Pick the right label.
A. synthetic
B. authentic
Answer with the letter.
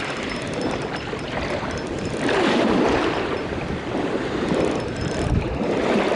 A